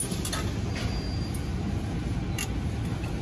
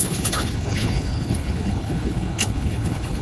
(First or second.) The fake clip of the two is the second